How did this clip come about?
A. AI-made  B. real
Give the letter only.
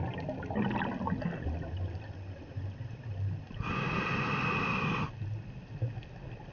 B